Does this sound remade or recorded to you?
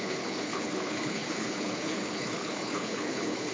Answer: remade